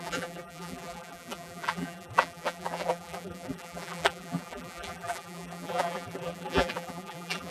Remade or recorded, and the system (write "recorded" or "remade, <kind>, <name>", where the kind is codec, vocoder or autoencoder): remade, vocoder, BigVGAN v2